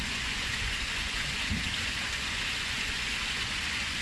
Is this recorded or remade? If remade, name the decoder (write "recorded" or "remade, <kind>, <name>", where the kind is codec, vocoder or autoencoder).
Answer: remade, vocoder, Vocos